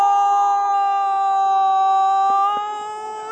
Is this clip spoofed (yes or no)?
no